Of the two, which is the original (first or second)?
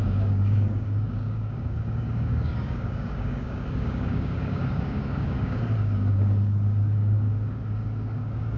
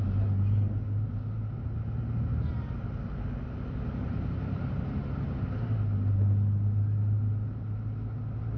second